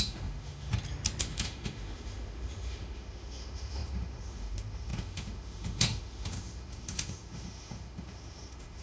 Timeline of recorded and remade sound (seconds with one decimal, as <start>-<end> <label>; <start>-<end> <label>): 0.0-0.7 remade; 0.7-1.2 recorded; 1.2-8.8 remade